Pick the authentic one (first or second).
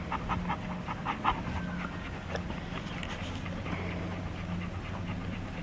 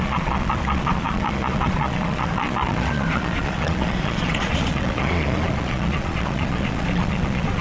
first